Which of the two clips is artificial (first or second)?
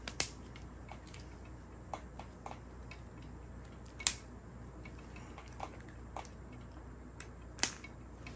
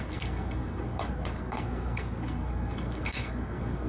second